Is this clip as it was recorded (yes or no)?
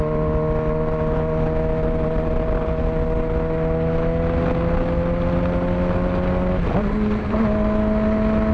yes